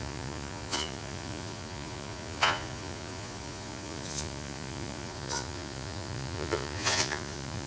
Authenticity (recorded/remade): remade